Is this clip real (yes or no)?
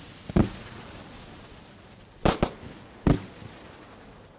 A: yes